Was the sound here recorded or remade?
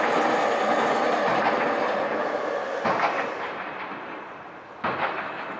recorded